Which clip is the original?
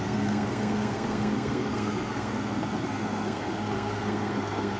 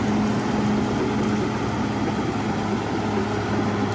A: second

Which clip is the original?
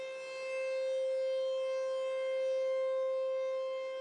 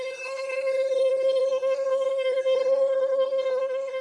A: first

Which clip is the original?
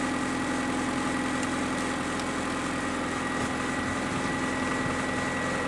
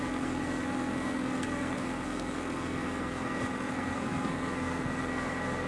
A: first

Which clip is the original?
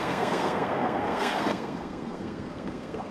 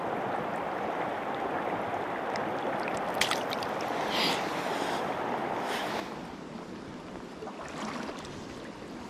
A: second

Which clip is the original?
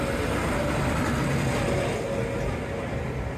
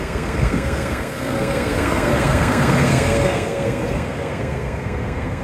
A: first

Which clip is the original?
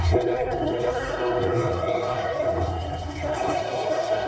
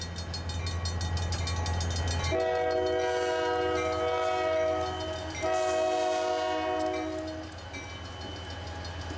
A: second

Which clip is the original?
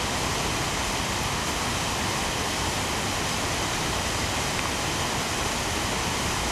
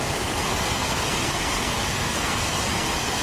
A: first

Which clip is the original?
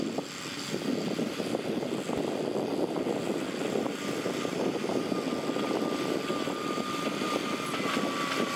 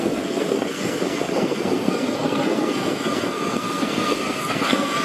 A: first